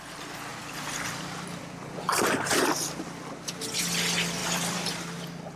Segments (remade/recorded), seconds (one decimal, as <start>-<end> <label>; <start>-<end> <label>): 0.0-0.5 recorded; 0.5-3.9 remade; 3.9-4.4 recorded; 4.4-5.1 remade; 5.1-5.6 recorded